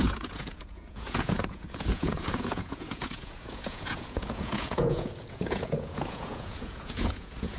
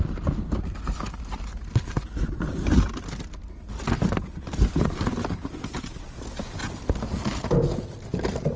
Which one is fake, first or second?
first